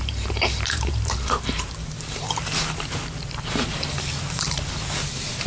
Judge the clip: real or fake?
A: fake